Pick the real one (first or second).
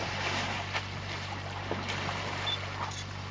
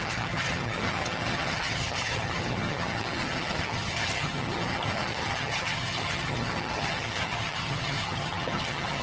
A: first